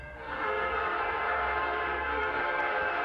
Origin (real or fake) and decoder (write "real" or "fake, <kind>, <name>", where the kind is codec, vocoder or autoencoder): fake, codec, SNAC